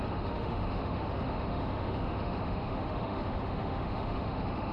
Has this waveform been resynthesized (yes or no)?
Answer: yes